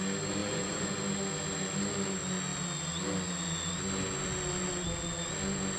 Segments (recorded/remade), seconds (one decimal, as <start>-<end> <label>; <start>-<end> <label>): 0.0-0.4 recorded; 0.4-1.0 remade; 1.0-5.8 recorded